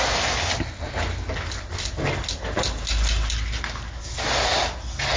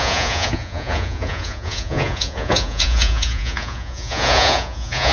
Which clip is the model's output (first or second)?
second